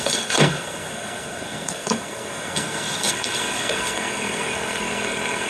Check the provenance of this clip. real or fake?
fake